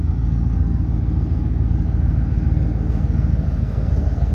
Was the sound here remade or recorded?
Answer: remade